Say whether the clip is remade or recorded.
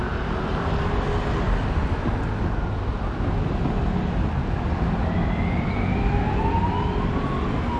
recorded